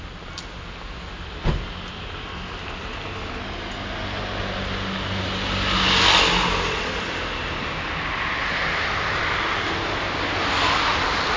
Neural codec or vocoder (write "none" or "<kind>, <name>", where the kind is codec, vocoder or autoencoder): none